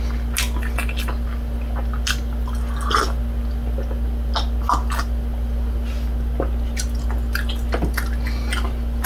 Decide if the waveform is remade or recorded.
recorded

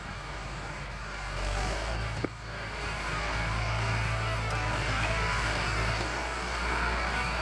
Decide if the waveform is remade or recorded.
remade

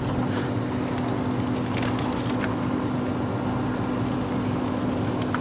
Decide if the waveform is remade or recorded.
recorded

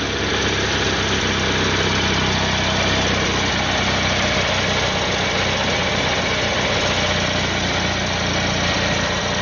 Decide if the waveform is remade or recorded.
recorded